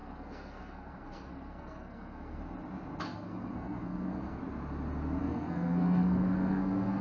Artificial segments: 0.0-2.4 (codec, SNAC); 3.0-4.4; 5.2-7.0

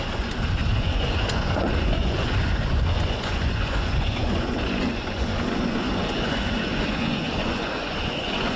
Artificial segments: 0.0-8.6 (vocoder, Vocos)

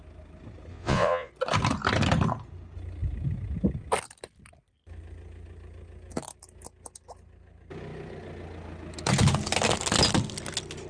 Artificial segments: 0.7-1.3 (vocoder, Vocos)

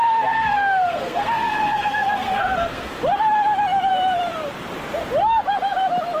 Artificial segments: 0.0-3.0 (codec, SNAC)

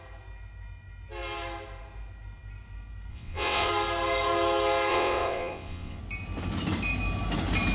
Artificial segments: 3.1-3.7 (vocoder, WaveNeXt); 4.9-6.0

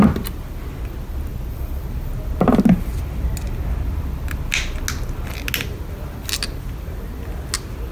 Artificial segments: 1.3-1.8 (vocoder, BigVGAN v2)

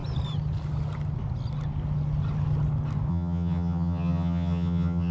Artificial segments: 3.1-5.1 (vocoder, HiFi-GAN)